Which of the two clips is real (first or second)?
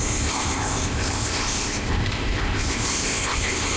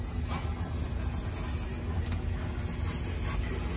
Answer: second